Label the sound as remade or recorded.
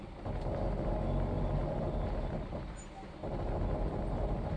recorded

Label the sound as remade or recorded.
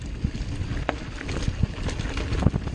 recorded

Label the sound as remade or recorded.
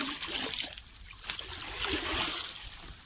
recorded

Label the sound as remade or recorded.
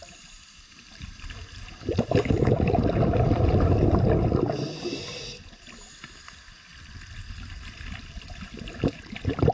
remade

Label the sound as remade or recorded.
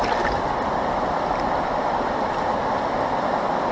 recorded